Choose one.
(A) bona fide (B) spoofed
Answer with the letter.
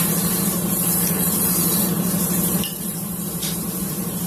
B